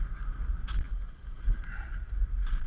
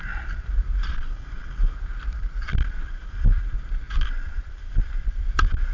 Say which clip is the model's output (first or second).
second